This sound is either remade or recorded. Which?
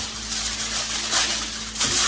recorded